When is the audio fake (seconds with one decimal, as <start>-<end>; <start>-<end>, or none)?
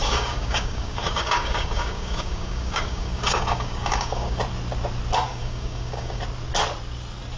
0.0-4.4; 5.3-6.2